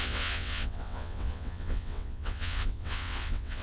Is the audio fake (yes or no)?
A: yes